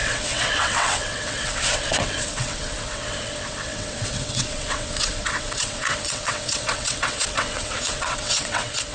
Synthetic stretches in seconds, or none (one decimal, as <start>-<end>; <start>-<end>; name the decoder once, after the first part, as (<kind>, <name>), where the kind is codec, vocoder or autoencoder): 0.0-8.9 (vocoder, WaveNeXt)